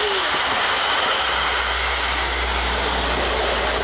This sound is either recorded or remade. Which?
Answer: recorded